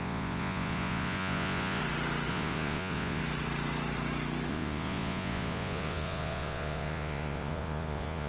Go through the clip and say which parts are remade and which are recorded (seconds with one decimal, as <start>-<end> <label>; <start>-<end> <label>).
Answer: 0.0-1.8 remade; 1.8-2.3 recorded; 2.3-3.2 remade; 3.2-4.5 recorded; 4.5-8.3 remade